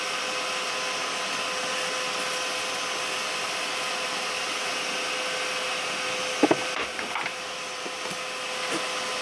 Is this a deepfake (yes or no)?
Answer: no